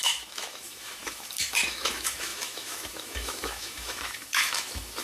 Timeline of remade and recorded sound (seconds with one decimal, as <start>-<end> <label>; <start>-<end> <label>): 0.0-5.0 remade